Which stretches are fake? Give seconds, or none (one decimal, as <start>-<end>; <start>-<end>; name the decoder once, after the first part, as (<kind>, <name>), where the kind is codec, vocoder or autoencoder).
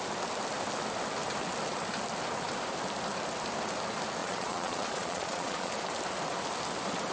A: 4.2-5.7 (vocoder, Vocos)